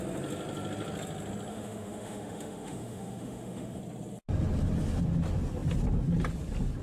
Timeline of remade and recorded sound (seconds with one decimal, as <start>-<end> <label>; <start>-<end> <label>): 0.0-1.5 recorded; 1.5-3.8 remade; 3.8-6.8 recorded